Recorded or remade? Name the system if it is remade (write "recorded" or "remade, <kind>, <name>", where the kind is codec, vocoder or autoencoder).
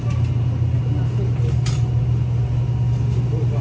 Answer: recorded